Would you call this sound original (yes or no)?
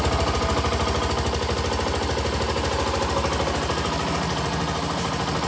yes